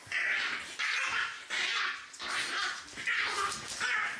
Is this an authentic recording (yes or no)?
yes